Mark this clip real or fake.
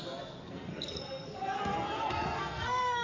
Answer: fake